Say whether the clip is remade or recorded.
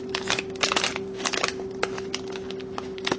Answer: recorded